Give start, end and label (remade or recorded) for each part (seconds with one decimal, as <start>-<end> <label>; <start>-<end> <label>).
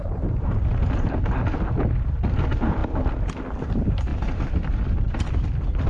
0.0-5.9 recorded